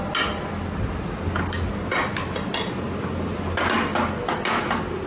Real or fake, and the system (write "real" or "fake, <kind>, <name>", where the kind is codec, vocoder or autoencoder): real